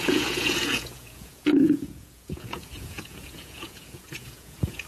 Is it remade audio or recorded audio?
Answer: remade